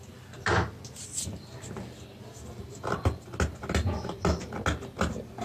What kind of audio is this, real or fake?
real